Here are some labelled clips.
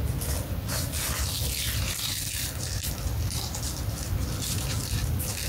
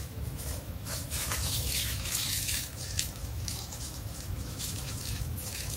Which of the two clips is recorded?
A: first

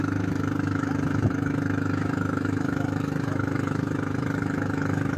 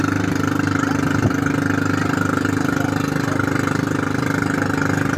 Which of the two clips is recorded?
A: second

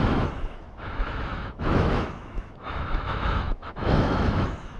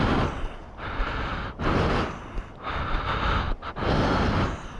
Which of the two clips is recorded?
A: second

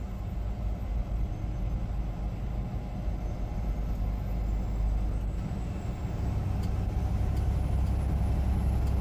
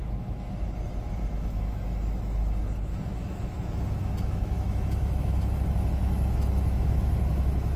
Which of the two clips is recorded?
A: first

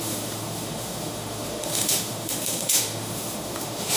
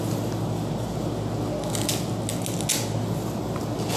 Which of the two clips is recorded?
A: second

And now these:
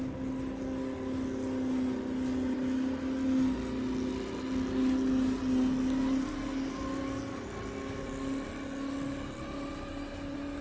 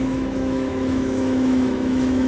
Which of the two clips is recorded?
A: first